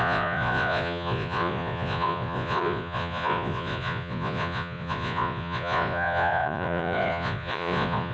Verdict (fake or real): fake